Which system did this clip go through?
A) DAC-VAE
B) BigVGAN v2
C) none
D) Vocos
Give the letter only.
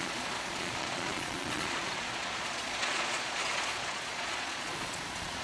D